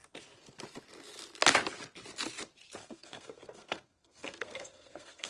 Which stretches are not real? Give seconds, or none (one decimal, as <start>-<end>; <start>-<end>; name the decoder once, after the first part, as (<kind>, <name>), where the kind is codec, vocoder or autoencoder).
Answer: 2.8-5.3 (codec, SNAC)